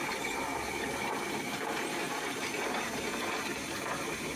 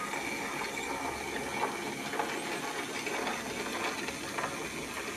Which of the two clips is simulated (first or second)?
first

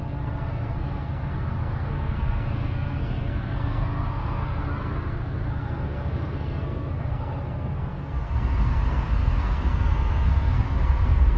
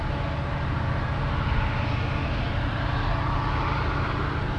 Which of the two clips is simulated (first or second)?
first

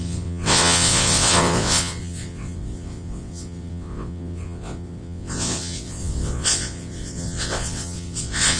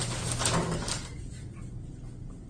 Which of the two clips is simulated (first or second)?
first